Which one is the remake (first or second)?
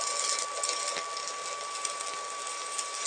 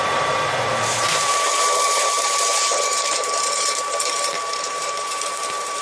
second